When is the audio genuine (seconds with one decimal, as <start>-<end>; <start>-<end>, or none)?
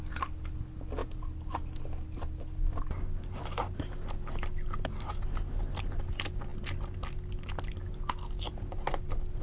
0.0-9.4